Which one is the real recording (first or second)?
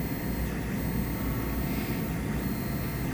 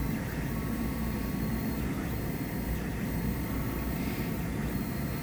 first